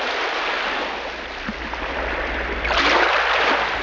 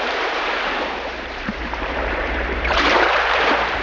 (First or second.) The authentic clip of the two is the first